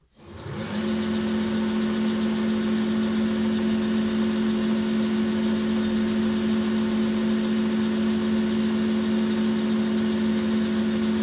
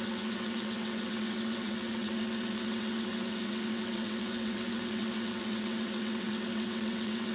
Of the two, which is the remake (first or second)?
second